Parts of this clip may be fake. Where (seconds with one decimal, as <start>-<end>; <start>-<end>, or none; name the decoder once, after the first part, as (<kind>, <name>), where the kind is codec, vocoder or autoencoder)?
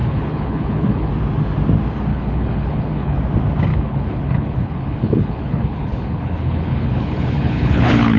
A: 0.0-1.1 (codec, HILCodec); 2.1-3.2; 3.7-8.2